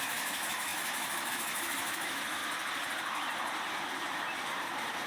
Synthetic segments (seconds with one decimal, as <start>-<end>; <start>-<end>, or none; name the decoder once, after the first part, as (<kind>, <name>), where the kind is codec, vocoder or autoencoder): 0.0-2.4 (autoencoder, DAC-VAE)